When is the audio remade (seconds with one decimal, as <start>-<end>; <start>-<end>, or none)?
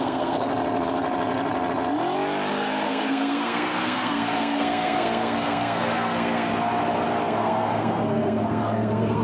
0.0-0.5; 2.5-6.5; 7.2-9.2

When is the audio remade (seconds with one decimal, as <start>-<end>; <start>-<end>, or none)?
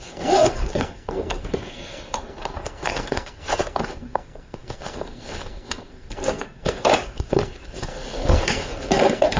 0.0-9.4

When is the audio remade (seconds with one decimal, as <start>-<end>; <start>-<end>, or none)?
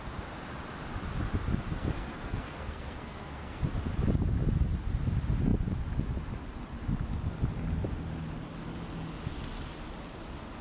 1.7-3.6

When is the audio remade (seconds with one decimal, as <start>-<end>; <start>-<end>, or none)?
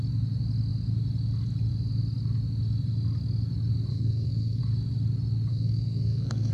3.9-4.6; 5.5-6.5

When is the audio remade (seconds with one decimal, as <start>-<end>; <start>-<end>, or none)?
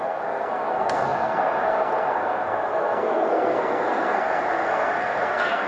0.0-5.7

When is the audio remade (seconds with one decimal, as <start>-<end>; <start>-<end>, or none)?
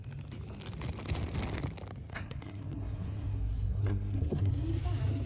2.1-4.5